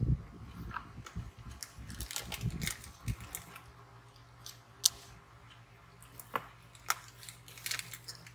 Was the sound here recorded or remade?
recorded